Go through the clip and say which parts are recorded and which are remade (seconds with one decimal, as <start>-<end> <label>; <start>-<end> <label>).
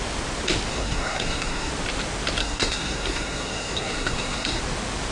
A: 0.0-0.7 recorded; 0.7-1.7 remade; 1.7-2.4 recorded; 2.4-4.6 remade; 4.6-5.1 recorded